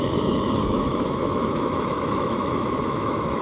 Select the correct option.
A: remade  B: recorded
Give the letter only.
A